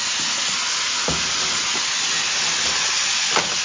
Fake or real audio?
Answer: real